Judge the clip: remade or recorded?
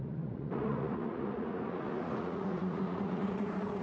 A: remade